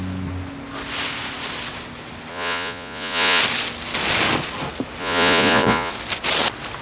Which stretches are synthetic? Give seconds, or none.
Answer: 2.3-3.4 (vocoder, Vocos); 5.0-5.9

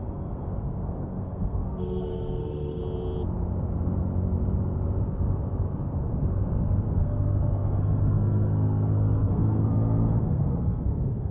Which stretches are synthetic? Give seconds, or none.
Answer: 0.0-2.8 (codec, SNAC); 6.8-11.3